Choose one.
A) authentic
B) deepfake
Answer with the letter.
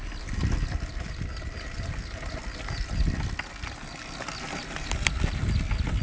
A